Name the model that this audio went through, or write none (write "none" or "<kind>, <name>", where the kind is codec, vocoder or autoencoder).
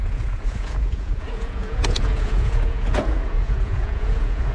vocoder, Vocos